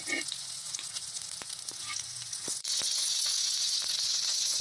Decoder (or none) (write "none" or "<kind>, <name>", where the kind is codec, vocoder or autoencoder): vocoder, Vocos